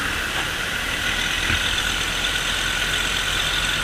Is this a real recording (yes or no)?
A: yes